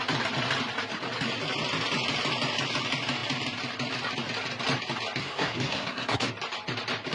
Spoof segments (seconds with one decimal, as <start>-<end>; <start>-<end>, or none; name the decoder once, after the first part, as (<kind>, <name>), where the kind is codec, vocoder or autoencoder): 5.2-6.3 (codec, SNAC)